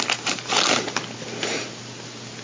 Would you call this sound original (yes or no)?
yes